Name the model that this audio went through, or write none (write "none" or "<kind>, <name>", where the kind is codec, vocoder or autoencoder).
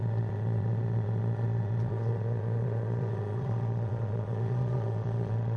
vocoder, Vocos